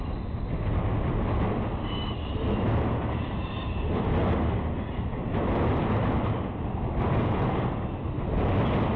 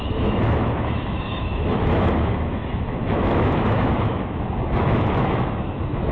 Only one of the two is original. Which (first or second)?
first